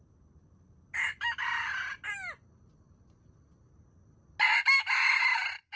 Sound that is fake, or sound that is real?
real